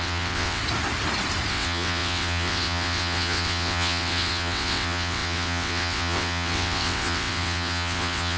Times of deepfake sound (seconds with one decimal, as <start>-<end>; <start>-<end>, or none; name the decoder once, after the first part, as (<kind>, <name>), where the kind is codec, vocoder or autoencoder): 0.0-0.6 (vocoder, WaveNeXt); 1.5-8.4